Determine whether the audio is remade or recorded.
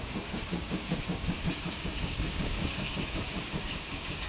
remade